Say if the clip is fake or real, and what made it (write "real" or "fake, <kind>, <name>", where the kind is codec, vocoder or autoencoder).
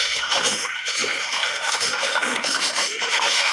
fake, autoencoder, DAC-VAE